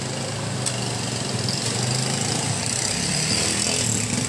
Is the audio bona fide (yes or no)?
yes